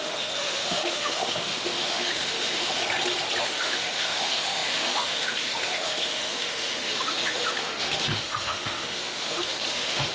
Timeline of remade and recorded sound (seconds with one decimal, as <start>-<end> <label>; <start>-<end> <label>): 0.0-2.8 remade; 2.8-3.4 recorded; 3.4-10.1 remade